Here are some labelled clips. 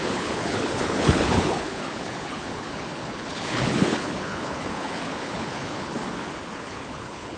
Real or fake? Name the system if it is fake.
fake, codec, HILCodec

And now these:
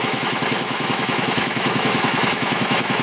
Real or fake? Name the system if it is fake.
fake, autoencoder, DAC-VAE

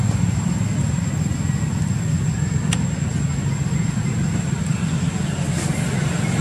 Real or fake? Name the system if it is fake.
real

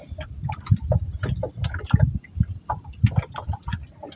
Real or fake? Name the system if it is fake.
real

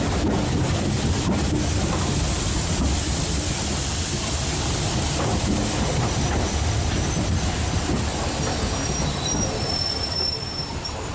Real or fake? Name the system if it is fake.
real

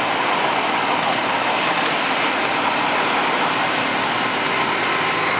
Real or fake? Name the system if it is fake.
real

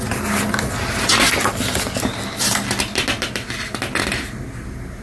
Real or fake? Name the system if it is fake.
real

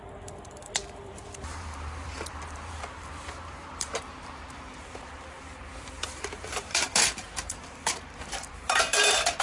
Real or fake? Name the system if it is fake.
fake, vocoder, BigVGAN v2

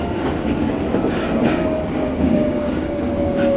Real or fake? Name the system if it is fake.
fake, codec, DAC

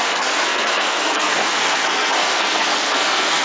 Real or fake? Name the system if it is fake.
fake, codec, SNAC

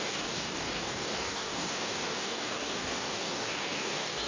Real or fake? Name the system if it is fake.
fake, codec, DAC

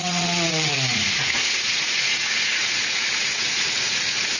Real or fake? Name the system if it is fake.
fake, vocoder, Vocos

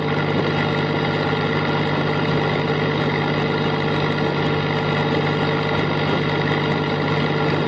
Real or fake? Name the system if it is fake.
real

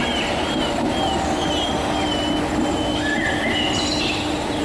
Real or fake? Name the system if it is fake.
real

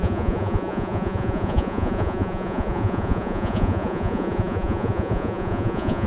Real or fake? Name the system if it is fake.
fake, vocoder, Vocos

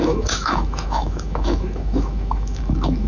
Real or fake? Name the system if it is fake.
fake, autoencoder, DAC-VAE